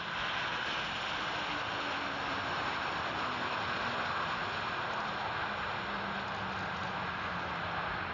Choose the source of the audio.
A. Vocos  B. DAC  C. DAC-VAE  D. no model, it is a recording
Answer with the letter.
D